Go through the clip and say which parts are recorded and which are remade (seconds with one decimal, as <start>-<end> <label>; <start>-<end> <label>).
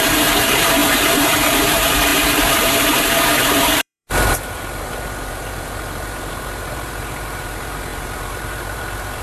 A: 0.0-9.2 remade